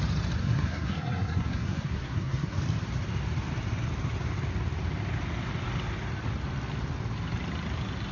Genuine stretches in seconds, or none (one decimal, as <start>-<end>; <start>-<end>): 0.0-0.4; 2.6-8.1

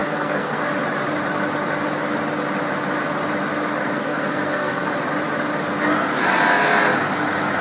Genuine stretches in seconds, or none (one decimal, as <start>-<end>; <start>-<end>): 0.6-3.7; 4.9-7.6

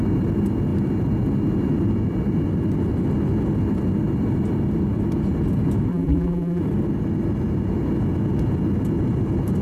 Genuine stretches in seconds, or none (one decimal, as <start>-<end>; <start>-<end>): 0.0-5.9; 6.6-9.6

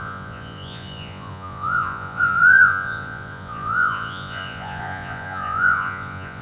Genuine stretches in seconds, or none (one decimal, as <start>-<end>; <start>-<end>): none

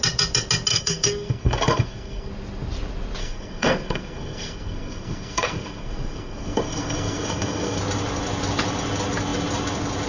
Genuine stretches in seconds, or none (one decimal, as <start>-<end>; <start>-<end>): 0.0-0.7; 2.3-3.2; 7.8-10.1

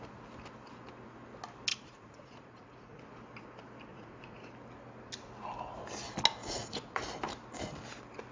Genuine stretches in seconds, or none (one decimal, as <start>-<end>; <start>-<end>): 0.0-1.7; 3.0-3.9; 4.5-6.4; 7.0-8.3